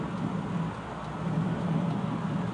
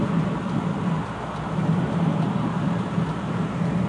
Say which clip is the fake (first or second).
second